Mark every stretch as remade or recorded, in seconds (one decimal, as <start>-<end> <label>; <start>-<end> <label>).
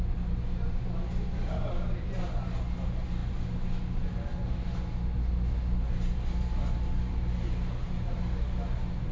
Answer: 0.0-9.1 recorded